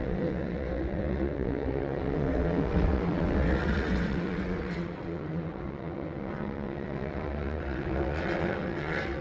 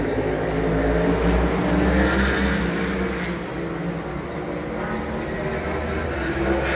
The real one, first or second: second